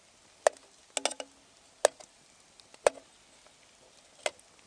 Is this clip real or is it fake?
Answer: real